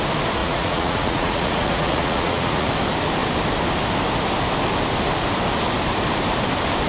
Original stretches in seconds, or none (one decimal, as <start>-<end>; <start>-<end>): 0.0-0.4; 2.7-6.9